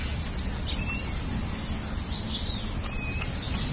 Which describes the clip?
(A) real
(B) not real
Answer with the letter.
A